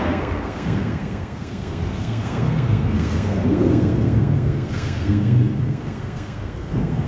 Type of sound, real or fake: fake